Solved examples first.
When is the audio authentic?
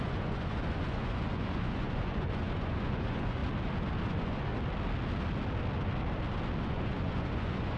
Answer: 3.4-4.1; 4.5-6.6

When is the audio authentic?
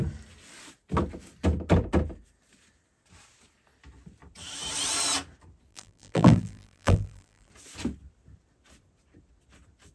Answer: 0.0-5.7; 7.5-9.9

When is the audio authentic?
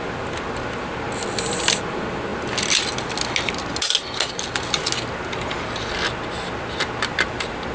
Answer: 0.0-7.7